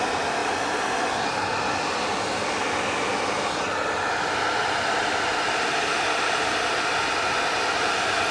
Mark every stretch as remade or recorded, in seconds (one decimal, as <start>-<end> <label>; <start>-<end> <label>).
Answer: 0.0-8.3 recorded